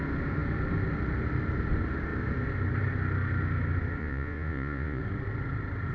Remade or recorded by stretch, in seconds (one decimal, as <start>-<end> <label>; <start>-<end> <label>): 0.0-4.0 recorded; 4.0-5.0 remade; 5.0-5.9 recorded